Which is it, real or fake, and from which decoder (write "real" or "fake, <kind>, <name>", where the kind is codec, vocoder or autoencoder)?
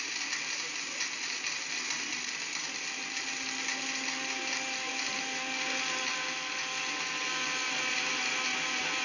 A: real